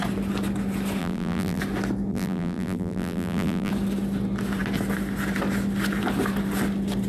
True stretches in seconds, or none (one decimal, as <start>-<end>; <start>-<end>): 0.0-1.0; 1.6-2.1; 3.7-7.1